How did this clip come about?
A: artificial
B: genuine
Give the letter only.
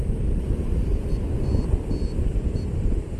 B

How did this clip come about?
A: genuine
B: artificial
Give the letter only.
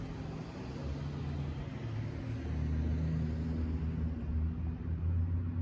A